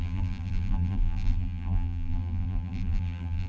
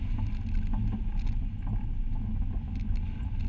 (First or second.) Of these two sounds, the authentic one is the second